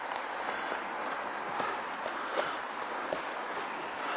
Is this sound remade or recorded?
remade